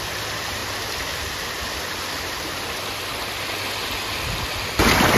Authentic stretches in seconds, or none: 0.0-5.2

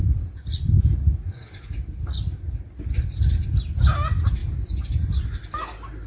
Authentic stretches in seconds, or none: 0.0-6.1